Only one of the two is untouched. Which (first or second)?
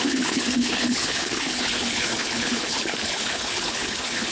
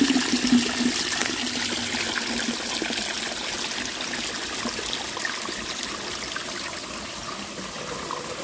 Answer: second